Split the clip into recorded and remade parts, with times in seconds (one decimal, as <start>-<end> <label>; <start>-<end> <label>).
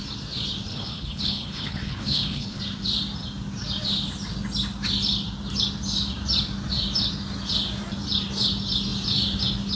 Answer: 0.0-0.7 recorded; 0.7-2.6 remade; 2.6-9.8 recorded